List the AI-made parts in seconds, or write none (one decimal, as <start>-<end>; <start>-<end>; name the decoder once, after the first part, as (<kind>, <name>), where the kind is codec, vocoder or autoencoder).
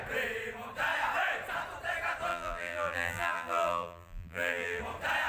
2.3-4.8 (vocoder, BigVGAN v2)